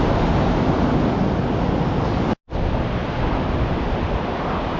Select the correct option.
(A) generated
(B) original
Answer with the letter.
B